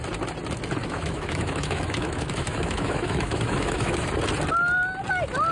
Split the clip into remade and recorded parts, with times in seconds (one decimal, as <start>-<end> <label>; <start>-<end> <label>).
0.0-0.8 recorded; 0.8-4.1 remade; 4.1-5.5 recorded